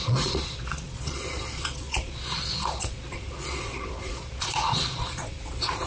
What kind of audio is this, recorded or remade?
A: remade